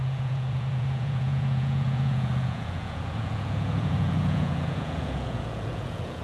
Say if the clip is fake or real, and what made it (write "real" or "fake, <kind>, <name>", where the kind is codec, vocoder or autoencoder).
fake, vocoder, Vocos